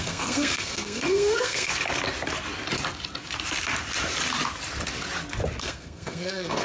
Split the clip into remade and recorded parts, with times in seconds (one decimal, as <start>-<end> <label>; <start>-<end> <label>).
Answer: 0.0-1.7 remade; 1.7-5.6 recorded; 5.6-6.6 remade